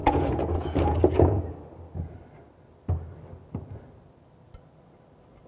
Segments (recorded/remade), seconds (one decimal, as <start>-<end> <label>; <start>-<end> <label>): 0.0-1.4 remade; 1.4-5.5 recorded